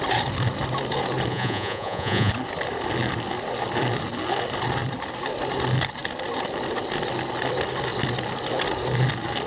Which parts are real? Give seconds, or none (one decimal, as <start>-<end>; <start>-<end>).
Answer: 0.0-1.3; 2.3-9.5